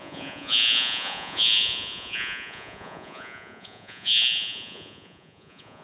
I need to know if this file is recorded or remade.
remade